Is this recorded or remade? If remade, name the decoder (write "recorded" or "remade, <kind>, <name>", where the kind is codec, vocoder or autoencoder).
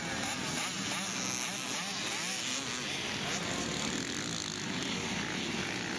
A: recorded